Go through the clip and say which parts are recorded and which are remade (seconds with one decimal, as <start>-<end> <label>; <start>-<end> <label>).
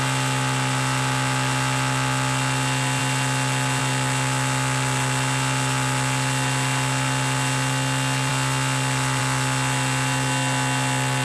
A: 0.0-11.2 recorded